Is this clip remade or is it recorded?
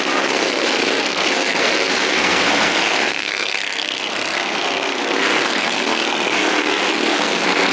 remade